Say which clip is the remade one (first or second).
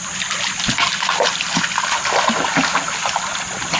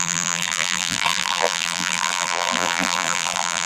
second